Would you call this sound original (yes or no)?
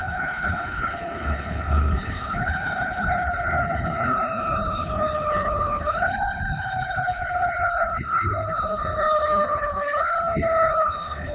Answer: no